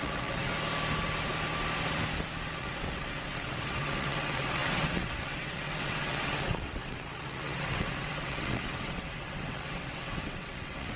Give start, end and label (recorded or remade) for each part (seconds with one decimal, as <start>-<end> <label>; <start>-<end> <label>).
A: 0.0-0.5 remade; 0.5-2.6 recorded; 2.6-11.0 remade